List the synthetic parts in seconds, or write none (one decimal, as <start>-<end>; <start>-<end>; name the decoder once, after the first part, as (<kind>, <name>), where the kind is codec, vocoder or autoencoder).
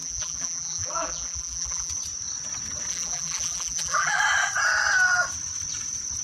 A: 0.0-1.9 (vocoder, BigVGAN v2); 2.9-4.2